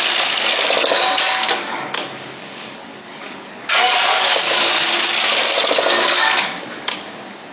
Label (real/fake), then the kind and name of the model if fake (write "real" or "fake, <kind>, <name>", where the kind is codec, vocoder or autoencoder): fake, codec, DAC